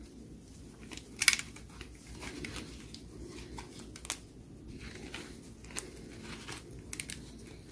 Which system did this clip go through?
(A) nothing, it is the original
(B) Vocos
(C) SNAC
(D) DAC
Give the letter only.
A